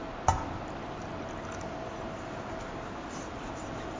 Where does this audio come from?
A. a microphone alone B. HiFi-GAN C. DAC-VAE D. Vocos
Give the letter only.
A